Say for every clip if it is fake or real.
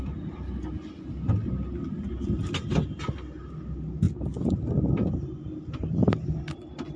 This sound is real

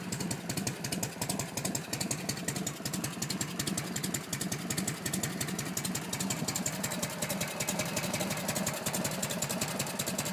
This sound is real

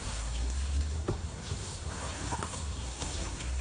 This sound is fake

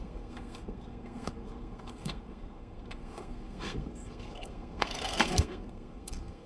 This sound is fake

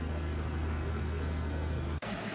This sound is fake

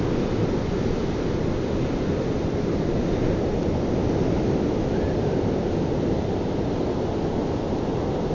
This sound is real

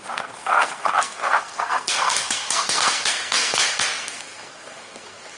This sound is fake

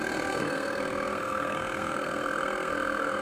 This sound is fake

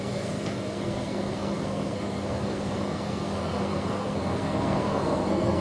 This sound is fake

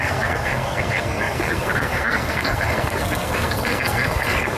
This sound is fake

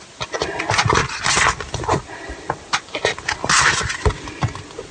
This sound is real